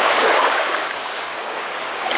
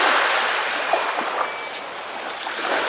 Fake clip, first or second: first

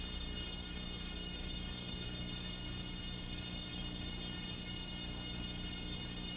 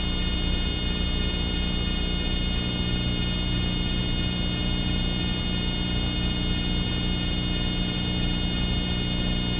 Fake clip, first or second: first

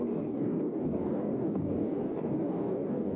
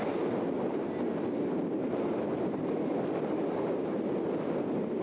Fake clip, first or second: first